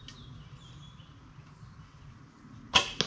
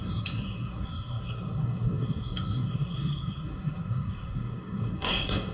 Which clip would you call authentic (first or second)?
first